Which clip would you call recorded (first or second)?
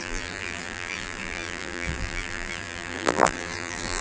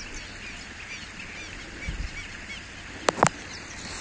second